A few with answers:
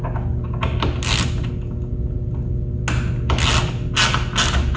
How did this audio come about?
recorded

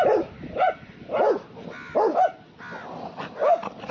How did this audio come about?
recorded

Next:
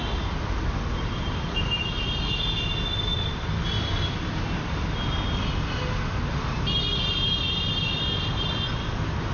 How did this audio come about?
recorded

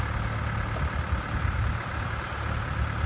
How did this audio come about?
recorded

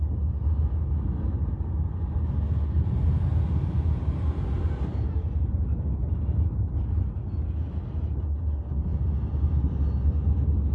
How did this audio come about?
recorded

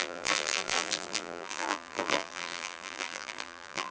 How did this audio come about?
remade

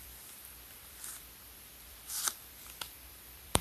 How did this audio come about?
remade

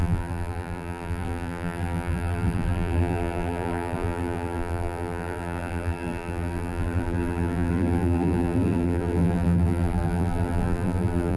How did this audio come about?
remade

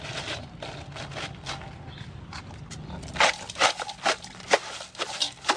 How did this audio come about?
recorded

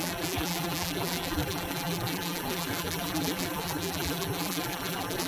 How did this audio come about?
remade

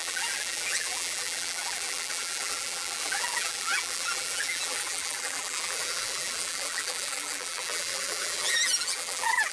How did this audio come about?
remade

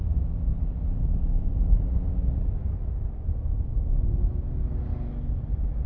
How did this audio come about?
recorded